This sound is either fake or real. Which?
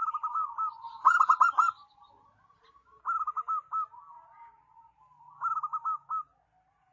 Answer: real